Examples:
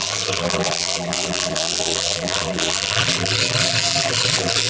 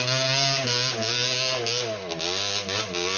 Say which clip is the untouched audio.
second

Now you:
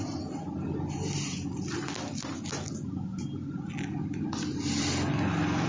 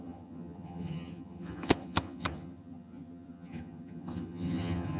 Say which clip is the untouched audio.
first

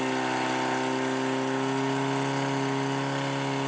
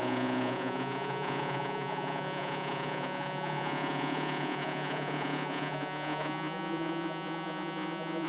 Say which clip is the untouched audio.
first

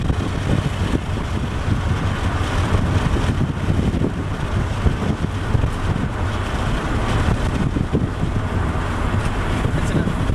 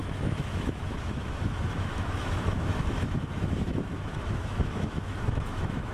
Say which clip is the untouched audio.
first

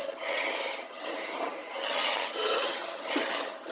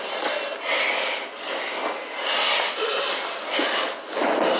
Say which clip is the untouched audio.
second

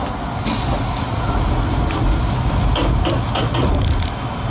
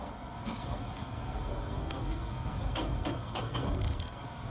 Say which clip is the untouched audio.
first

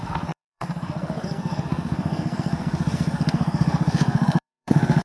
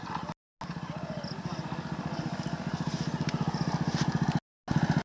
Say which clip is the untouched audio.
second